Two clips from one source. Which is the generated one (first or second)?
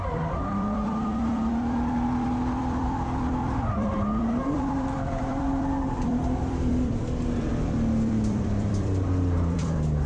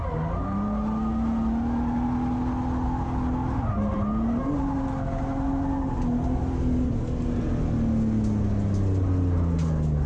first